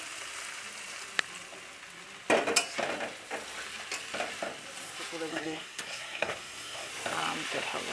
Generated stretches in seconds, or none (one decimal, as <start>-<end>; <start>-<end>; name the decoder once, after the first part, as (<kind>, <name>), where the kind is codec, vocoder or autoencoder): 5.3-6.9 (codec, SNAC)